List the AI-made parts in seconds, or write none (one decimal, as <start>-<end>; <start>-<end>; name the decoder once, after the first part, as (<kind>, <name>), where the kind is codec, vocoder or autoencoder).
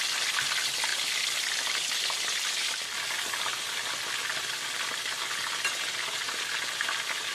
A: 0.9-4.9 (vocoder, BigVGAN v2)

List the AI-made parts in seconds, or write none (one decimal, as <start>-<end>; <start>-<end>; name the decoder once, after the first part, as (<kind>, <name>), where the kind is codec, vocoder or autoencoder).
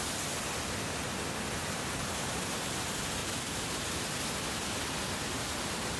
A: 1.6-2.8 (vocoder, BigVGAN v2); 3.2-3.9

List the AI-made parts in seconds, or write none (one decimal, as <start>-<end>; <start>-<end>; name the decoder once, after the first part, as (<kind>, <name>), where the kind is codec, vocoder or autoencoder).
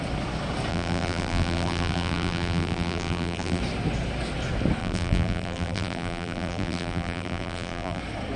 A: 0.7-3.6 (vocoder, BigVGAN v2); 4.8-8.0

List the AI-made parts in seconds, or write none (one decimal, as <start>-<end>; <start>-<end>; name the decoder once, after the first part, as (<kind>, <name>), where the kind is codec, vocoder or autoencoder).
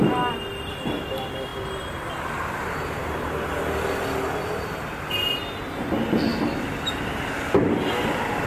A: none